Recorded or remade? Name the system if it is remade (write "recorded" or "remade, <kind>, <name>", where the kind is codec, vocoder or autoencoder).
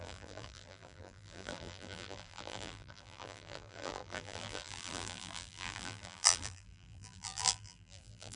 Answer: remade, vocoder, BigVGAN v2